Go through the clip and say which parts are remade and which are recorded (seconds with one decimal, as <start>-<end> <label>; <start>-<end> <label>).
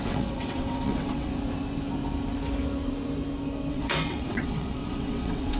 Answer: 0.0-1.3 remade; 1.3-3.7 recorded; 3.7-5.6 remade